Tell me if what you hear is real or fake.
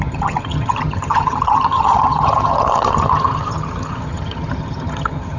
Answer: fake